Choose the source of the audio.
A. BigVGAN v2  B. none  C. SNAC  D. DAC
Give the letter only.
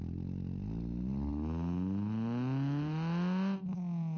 B